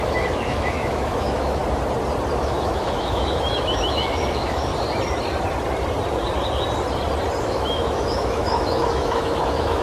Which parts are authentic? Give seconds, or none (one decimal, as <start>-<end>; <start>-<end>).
1.6-2.4; 4.7-7.4